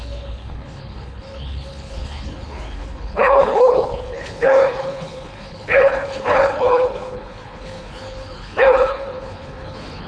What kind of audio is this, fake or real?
fake